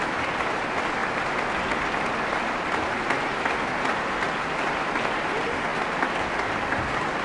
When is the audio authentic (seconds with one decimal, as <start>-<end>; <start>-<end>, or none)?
0.0-7.2